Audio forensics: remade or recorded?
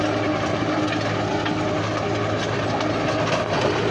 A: recorded